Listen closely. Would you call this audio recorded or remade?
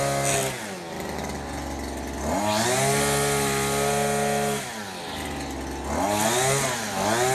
recorded